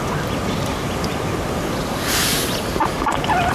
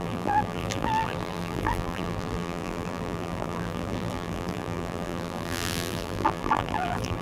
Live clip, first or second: first